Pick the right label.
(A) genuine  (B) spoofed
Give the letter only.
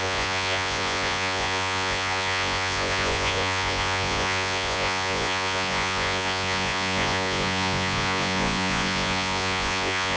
B